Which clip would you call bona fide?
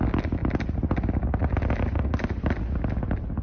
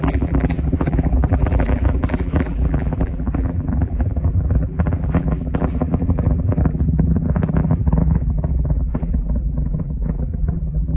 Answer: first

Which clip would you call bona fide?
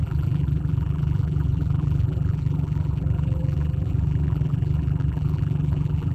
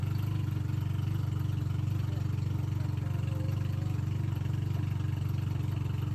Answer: second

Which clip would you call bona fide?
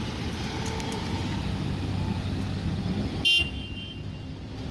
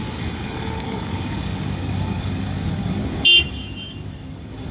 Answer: first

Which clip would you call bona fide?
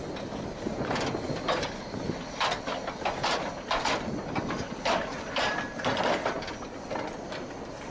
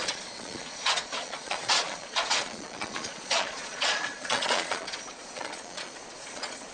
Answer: first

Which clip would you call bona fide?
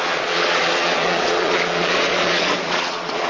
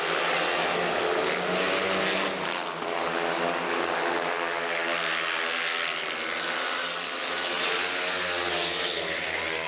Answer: second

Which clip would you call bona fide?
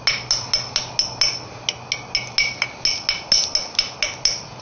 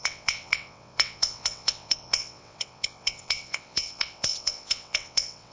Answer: first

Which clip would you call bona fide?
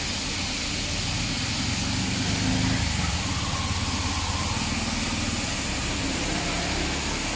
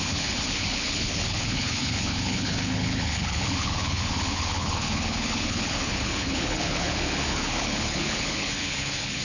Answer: first